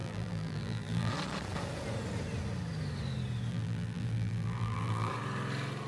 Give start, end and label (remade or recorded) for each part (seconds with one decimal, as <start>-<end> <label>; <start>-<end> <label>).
0.0-1.1 remade; 1.1-3.5 recorded; 3.5-5.1 remade; 5.1-5.9 recorded